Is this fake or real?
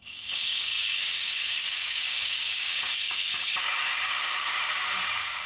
fake